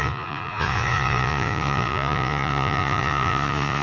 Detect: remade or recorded remade